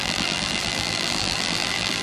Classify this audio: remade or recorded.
remade